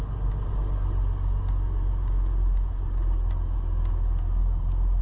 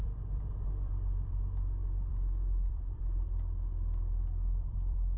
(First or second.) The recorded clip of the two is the first